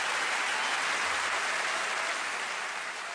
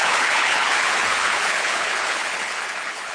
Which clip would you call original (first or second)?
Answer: first